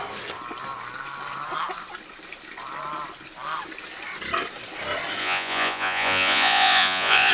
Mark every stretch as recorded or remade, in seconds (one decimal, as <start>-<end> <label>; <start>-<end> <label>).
0.0-5.2 recorded; 5.2-7.3 remade